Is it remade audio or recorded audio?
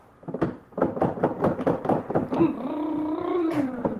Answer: remade